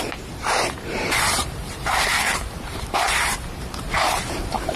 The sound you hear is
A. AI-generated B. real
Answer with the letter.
A